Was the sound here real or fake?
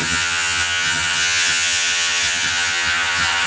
fake